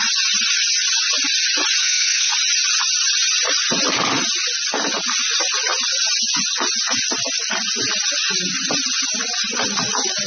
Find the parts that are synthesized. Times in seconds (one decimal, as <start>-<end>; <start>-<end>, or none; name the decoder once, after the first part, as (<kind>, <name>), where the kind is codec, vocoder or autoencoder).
1.8-2.3 (codec, SNAC)